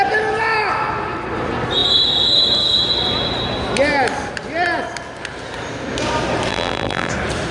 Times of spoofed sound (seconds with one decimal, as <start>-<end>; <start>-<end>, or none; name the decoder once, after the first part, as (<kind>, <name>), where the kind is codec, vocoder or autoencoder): 6.5-7.1 (vocoder, BigVGAN v2)